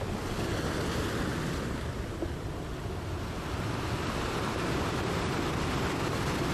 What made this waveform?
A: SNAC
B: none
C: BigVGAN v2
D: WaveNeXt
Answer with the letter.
B